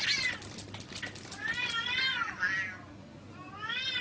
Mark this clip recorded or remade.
recorded